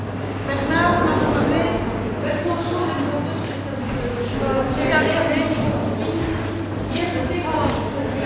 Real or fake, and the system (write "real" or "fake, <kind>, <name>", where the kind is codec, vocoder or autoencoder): real